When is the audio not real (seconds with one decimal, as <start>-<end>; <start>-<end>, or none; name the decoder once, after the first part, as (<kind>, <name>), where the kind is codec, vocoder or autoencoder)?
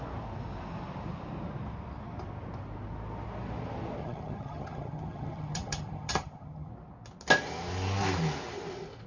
4.0-6.7 (vocoder, HiFi-GAN)